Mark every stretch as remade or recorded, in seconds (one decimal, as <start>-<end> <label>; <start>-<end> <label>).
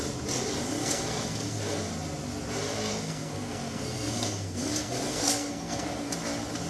0.0-0.8 recorded; 0.8-1.8 remade; 1.8-2.9 recorded; 2.9-6.1 remade; 6.1-6.7 recorded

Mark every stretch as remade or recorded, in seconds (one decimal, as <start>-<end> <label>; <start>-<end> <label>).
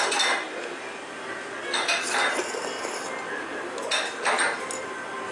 0.0-5.3 recorded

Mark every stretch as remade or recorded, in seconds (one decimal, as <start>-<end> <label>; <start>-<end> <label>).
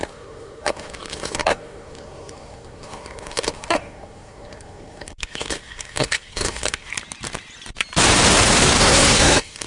0.0-6.9 remade; 6.9-8.8 recorded; 8.8-9.7 remade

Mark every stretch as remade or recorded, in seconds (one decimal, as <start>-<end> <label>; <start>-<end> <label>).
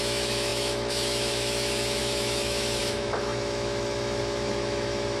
0.0-5.2 remade